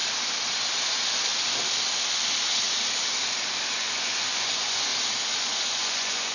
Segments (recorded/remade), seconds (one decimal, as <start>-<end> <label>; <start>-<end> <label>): 0.0-3.7 recorded; 3.7-4.9 remade; 4.9-5.4 recorded; 5.4-6.3 remade